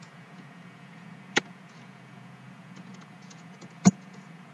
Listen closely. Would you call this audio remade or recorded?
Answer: remade